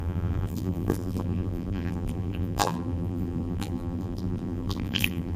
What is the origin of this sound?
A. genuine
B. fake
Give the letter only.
B